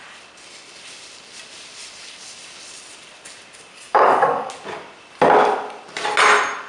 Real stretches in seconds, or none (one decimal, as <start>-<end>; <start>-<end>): 0.0-3.7; 4.5-6.7